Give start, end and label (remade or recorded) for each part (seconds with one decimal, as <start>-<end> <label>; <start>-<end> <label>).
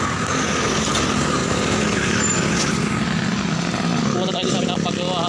0.0-5.3 recorded